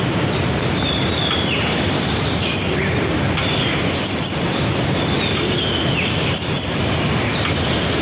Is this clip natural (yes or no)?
no